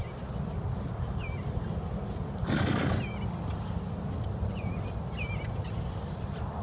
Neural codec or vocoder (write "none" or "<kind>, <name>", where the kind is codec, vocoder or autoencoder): none